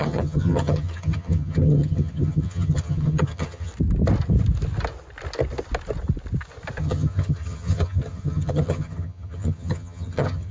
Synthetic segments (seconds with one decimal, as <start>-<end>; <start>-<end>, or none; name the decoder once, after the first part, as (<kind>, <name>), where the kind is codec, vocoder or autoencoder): 0.0-3.7 (vocoder, HiFi-GAN); 6.8-10.5